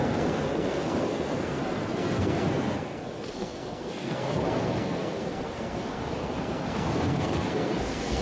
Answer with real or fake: fake